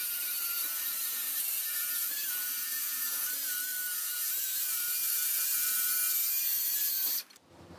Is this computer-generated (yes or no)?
yes